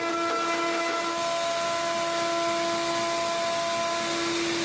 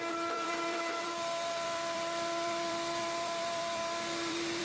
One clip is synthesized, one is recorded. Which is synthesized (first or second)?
second